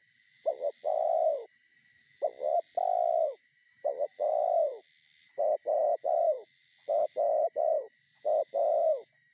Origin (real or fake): fake